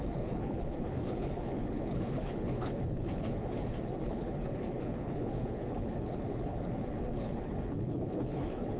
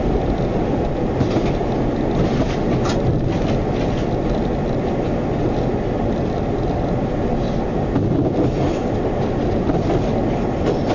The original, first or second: second